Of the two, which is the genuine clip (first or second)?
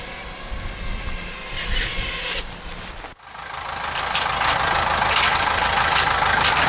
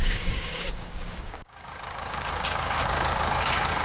first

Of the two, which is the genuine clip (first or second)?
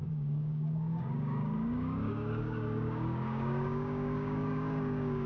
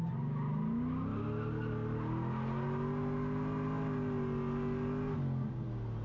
second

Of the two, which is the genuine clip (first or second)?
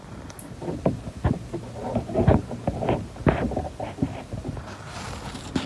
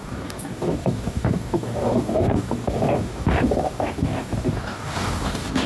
first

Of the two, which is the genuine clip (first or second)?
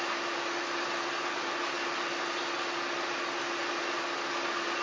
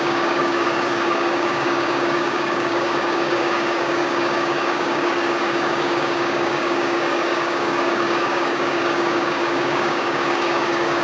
first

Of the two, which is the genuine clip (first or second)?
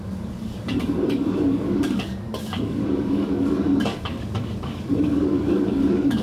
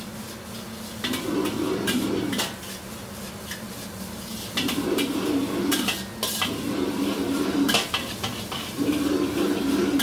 second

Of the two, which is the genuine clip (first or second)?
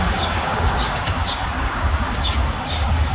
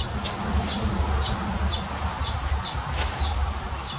second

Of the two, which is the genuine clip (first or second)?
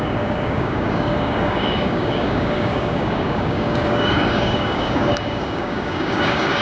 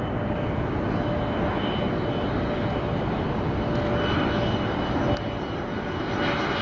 second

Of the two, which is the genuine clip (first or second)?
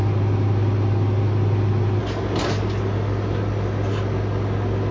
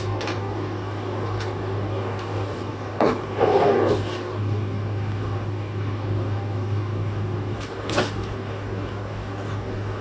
first